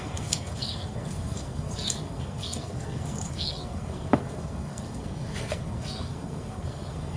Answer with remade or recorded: remade